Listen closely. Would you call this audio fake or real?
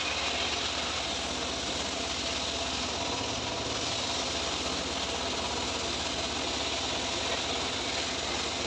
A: real